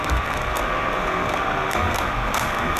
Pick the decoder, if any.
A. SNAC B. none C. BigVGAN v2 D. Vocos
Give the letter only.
A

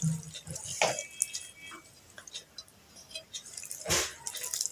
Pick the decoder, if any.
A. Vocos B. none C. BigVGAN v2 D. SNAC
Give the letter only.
B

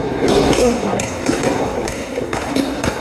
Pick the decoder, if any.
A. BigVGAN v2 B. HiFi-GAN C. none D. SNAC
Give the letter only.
D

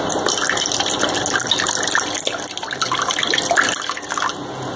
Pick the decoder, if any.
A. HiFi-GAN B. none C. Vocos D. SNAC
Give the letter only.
B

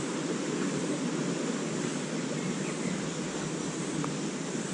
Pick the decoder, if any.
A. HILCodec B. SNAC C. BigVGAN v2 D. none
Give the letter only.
D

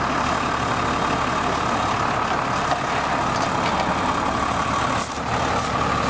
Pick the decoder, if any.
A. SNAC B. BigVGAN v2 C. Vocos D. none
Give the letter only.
D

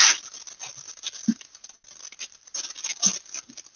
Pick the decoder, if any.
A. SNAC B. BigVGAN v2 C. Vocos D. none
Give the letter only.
D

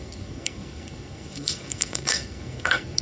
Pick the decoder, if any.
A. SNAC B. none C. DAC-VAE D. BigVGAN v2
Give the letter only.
A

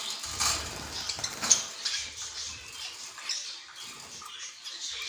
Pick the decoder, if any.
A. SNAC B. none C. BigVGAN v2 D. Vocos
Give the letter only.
B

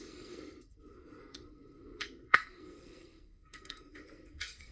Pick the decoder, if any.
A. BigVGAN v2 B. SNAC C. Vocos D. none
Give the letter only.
B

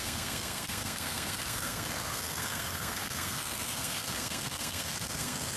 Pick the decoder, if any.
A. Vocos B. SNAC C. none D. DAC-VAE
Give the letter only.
B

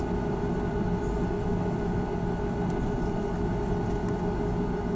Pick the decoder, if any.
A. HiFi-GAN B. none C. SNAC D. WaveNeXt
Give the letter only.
B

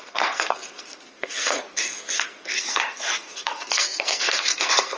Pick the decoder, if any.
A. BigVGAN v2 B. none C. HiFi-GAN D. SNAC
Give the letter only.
D